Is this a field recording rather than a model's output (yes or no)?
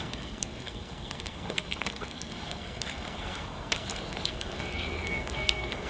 no